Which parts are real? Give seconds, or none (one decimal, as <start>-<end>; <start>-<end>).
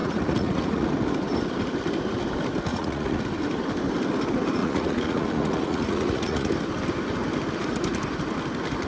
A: 0.9-2.7; 3.2-4.6; 6.5-8.9